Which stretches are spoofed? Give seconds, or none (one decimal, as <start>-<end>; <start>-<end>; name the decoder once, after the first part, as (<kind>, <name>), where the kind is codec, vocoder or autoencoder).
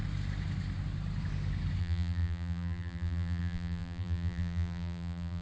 1.8-5.4 (vocoder, BigVGAN v2)